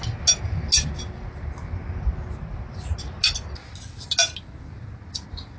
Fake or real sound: real